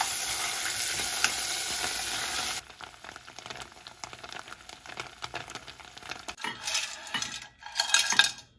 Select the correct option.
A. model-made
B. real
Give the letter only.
B